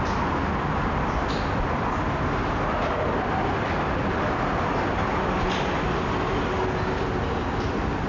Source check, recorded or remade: recorded